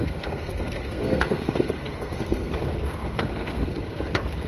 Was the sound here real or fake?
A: fake